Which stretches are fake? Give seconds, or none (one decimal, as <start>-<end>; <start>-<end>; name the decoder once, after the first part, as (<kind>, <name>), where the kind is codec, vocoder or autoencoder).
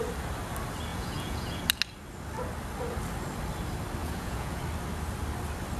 0.9-1.6 (vocoder, Vocos); 4.0-4.6